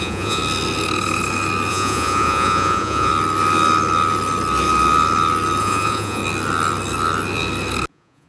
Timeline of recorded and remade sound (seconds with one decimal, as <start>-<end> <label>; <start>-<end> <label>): 0.0-0.4 remade; 0.4-1.7 recorded; 1.7-3.1 remade; 3.1-5.6 recorded; 5.6-6.2 remade; 6.2-7.9 recorded; 7.9-8.3 remade